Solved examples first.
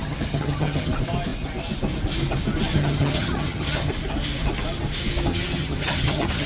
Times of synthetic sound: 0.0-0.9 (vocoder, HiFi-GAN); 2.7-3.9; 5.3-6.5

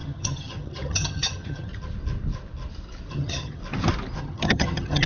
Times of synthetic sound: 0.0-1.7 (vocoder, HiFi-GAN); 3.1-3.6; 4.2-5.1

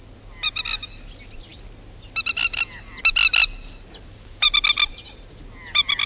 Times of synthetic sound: none

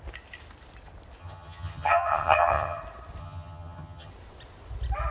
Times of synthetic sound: 1.2-2.8 (vocoder, HiFi-GAN); 3.2-4.1